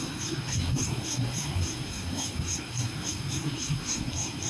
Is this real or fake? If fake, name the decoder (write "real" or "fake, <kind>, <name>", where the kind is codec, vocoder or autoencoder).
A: fake, codec, SNAC